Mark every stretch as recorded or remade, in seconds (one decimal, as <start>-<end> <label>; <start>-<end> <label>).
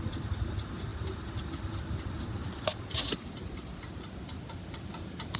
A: 0.0-5.4 recorded